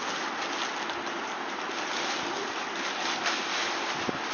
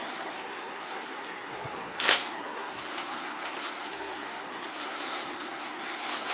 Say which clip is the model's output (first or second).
second